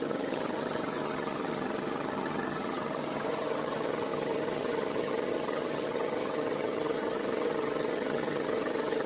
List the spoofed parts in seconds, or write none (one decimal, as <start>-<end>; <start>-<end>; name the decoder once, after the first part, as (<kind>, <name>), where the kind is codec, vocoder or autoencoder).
0.0-9.1 (vocoder, HiFi-GAN)